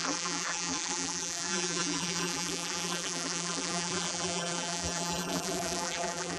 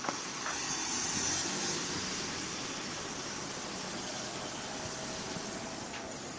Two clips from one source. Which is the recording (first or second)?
second